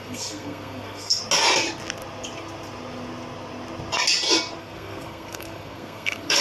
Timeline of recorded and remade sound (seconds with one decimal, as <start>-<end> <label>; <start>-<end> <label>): 0.0-1.2 remade; 1.2-4.6 recorded; 4.6-6.4 remade